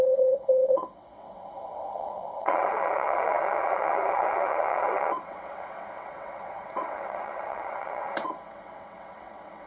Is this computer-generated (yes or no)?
yes